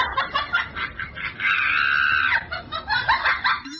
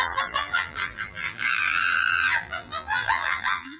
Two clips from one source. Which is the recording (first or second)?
first